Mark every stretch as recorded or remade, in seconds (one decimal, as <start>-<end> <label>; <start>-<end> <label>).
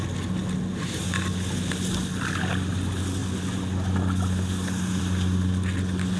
0.0-6.2 recorded